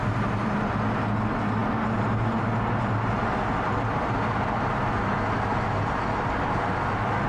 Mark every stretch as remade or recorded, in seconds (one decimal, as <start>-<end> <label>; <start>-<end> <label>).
0.0-7.3 recorded